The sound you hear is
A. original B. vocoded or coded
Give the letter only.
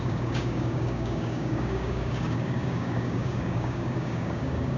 B